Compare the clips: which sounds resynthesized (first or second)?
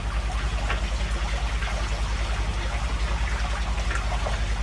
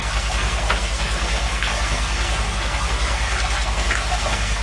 second